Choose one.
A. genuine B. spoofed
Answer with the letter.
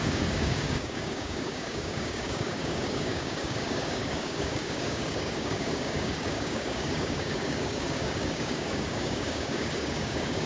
B